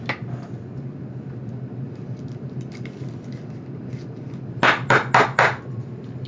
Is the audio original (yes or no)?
yes